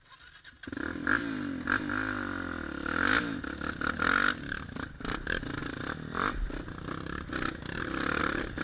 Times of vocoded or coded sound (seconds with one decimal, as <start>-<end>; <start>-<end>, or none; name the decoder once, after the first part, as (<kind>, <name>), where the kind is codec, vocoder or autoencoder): none